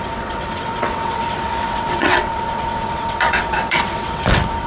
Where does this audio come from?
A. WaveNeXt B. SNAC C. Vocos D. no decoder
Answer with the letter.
A